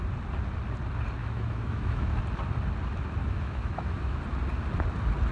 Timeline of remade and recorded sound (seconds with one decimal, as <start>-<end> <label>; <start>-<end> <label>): 0.0-1.2 recorded; 1.2-2.2 remade; 2.2-3.2 recorded; 3.2-4.2 remade; 4.2-5.3 recorded

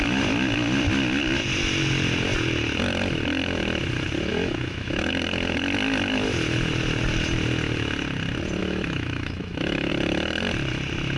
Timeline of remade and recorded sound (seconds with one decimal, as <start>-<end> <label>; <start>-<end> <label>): 0.0-4.3 recorded; 4.3-5.1 remade; 5.1-8.6 recorded; 8.6-9.9 remade; 9.9-11.2 recorded

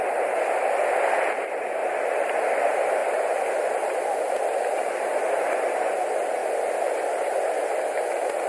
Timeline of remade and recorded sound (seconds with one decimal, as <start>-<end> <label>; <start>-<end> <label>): 0.0-8.5 recorded

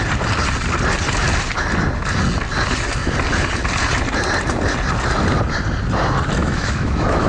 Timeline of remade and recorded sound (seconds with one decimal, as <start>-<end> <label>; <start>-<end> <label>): 0.0-6.4 recorded; 6.4-7.3 remade

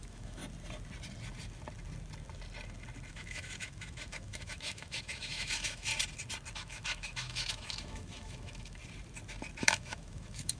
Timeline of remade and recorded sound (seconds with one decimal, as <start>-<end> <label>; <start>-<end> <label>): 0.0-0.4 remade; 0.4-3.1 recorded; 3.1-5.9 remade; 5.9-6.5 recorded; 6.5-8.8 remade; 8.8-9.6 recorded; 9.6-10.6 remade

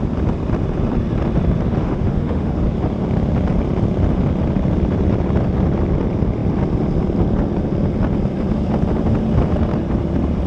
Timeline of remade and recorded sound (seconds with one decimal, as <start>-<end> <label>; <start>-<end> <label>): 0.0-1.8 recorded; 1.8-2.6 remade; 2.6-10.5 recorded

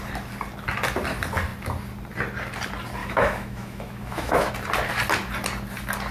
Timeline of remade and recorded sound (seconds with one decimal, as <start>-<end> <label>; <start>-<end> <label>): 0.0-3.0 recorded; 3.0-4.5 remade; 4.5-6.1 recorded

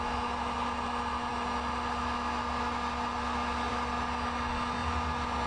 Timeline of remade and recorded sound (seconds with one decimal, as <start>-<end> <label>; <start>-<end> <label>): 0.0-5.5 recorded